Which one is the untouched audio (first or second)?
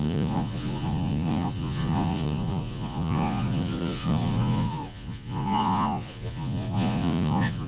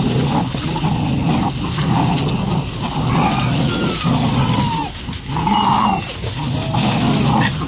second